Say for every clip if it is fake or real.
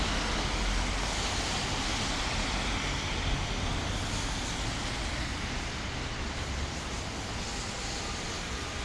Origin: real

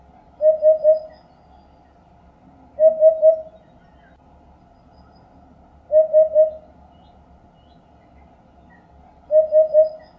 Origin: real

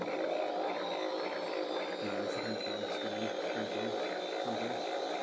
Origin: real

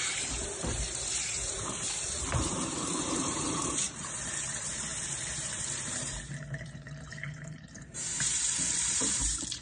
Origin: fake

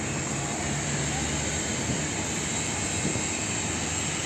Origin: real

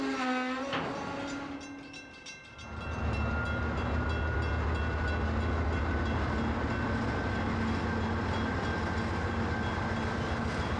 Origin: real